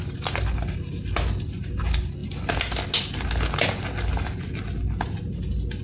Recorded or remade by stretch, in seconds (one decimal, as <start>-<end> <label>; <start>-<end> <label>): 0.0-5.8 recorded